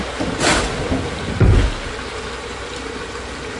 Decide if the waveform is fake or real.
real